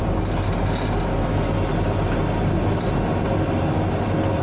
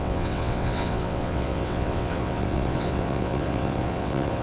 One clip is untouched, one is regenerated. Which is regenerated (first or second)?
second